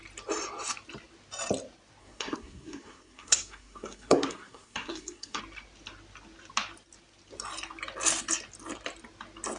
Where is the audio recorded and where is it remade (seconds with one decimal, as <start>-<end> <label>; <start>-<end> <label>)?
0.0-2.0 recorded; 2.0-5.4 remade; 5.4-9.6 recorded